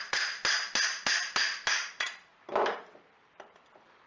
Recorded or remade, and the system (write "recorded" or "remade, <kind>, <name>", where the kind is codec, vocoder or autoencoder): recorded